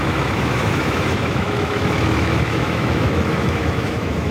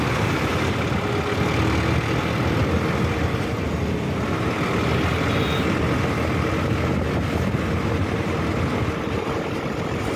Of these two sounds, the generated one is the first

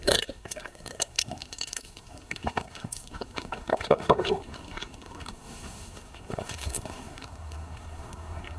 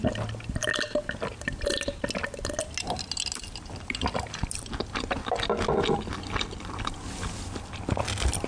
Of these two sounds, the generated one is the first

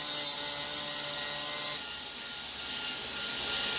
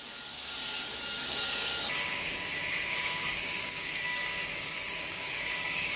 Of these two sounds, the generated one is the second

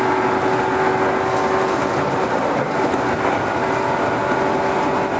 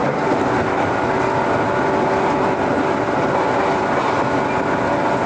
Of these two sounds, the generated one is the second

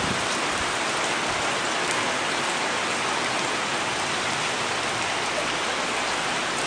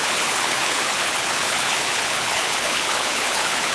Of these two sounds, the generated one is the second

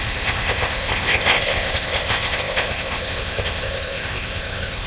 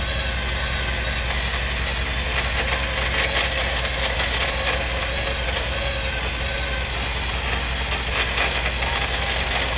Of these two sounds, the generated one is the first